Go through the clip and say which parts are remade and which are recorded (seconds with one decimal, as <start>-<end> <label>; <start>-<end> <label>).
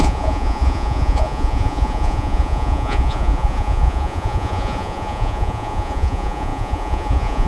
0.0-7.5 remade